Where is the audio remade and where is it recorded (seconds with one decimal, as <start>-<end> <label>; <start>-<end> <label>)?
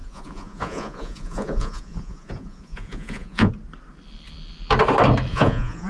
0.0-3.5 remade; 3.5-5.3 recorded; 5.3-5.9 remade